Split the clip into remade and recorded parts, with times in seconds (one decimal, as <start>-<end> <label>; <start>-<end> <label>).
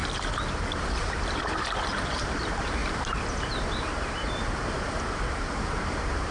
0.0-0.8 recorded; 0.8-6.3 remade